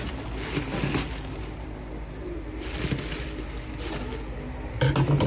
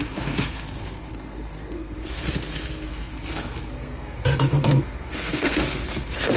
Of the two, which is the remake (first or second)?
second